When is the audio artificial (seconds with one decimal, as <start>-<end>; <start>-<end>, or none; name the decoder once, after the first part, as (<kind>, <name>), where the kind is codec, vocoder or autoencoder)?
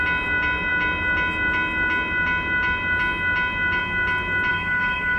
4.5-5.2 (autoencoder, DAC-VAE)